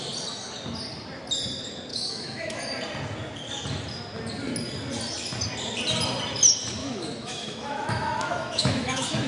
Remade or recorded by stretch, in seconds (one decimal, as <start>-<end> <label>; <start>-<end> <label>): 0.0-1.9 recorded; 1.9-2.6 remade; 2.6-6.8 recorded; 6.8-9.3 remade